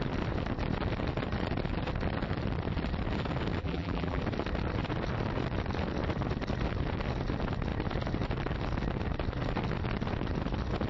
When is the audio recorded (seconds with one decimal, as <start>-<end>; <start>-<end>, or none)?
0.0-3.6; 4.2-10.9

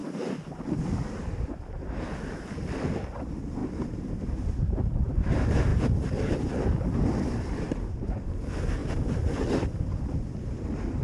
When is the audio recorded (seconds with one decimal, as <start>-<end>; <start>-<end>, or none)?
0.0-3.6; 5.3-5.7; 7.5-8.8; 10.2-11.0

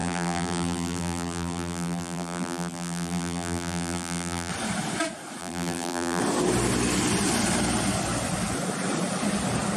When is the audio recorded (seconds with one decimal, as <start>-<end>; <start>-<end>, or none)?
4.5-5.4; 6.2-9.8

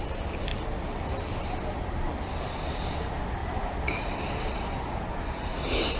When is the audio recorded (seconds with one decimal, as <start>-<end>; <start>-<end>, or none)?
0.5-2.7